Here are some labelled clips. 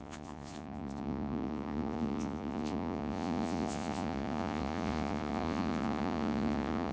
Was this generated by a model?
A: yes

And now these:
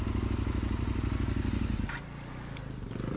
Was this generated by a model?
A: no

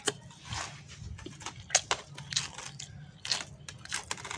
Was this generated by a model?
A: no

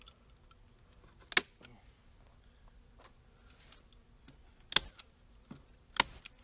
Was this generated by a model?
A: no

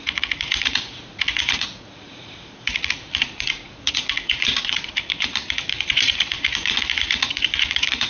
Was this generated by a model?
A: yes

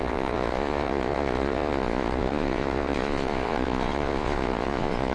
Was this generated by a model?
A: yes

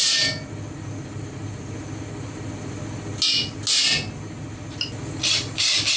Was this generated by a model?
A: no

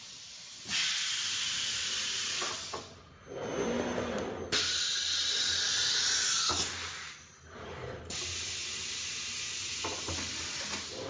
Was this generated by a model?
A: no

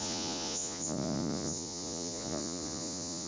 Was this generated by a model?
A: yes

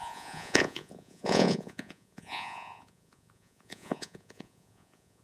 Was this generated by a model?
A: yes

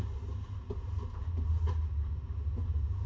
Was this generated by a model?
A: no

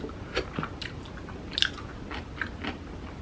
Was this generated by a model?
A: no